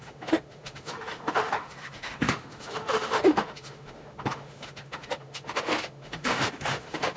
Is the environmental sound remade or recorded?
remade